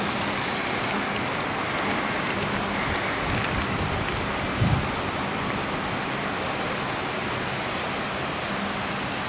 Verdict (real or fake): real